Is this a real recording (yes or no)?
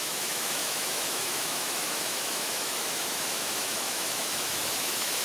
no